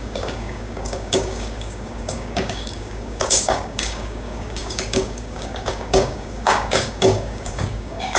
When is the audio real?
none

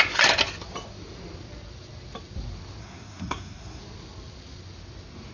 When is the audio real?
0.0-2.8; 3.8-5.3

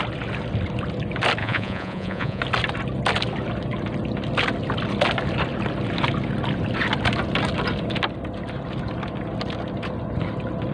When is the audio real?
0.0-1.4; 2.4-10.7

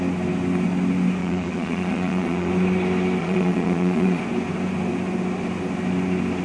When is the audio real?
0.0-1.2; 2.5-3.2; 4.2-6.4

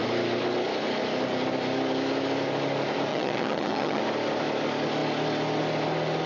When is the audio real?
0.0-3.1; 4.0-6.3

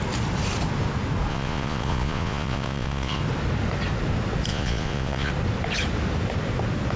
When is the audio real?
0.0-1.3; 3.2-4.5; 5.3-7.0